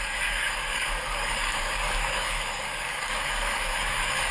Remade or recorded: remade